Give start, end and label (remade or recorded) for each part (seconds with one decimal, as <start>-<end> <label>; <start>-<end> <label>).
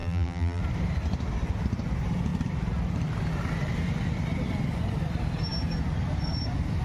0.0-0.6 remade; 0.6-6.8 recorded